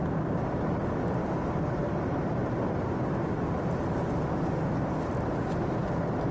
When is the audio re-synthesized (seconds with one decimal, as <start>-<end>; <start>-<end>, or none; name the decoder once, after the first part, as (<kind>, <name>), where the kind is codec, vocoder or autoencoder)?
1.2-1.9 (vocoder, BigVGAN v2)